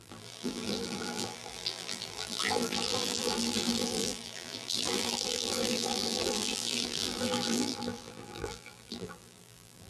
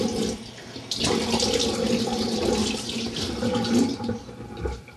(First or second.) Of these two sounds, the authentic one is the second